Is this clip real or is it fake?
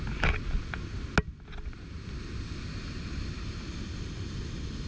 real